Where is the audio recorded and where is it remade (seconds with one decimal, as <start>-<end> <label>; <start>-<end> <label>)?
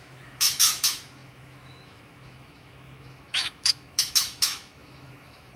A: 0.0-5.6 remade